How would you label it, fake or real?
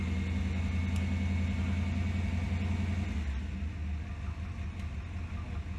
real